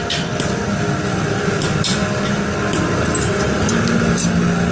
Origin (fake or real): real